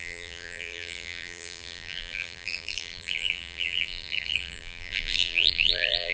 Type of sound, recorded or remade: remade